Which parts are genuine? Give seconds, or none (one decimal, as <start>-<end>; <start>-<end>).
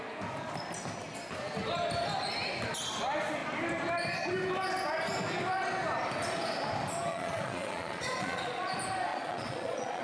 0.0-7.1; 8.7-9.1